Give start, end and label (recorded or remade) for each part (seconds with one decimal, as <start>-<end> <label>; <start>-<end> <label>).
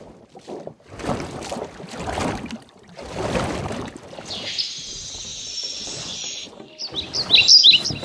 0.0-5.3 recorded; 5.3-6.7 remade; 6.7-8.0 recorded